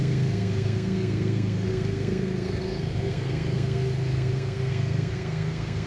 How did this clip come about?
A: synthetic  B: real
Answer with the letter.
A